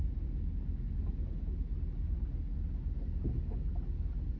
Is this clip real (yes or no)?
yes